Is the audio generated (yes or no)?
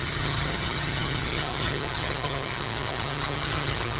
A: yes